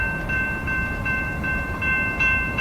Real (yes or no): no